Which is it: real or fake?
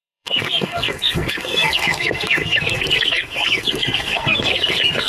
fake